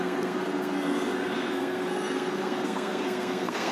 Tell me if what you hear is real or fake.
fake